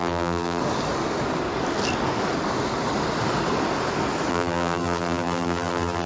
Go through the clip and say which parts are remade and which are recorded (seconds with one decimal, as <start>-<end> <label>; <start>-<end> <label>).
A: 0.0-0.6 remade; 0.6-4.3 recorded; 4.3-6.1 remade

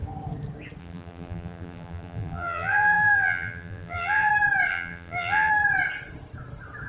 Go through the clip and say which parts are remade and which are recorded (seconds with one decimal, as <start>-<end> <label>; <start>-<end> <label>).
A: 0.0-0.8 recorded; 0.8-4.3 remade; 4.3-4.7 recorded; 4.7-5.5 remade; 5.5-6.9 recorded

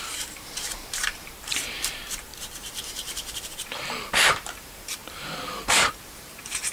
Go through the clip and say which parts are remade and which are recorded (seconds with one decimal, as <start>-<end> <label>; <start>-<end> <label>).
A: 0.0-6.7 remade

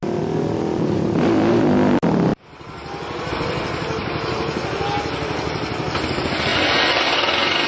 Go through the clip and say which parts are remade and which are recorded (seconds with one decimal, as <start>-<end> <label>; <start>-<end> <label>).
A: 0.0-4.0 recorded; 4.0-4.6 remade; 4.6-6.5 recorded; 6.5-7.0 remade; 7.0-7.7 recorded

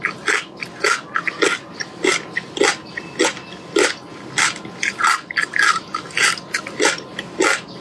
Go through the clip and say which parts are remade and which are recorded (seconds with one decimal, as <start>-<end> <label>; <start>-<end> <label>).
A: 0.0-7.8 recorded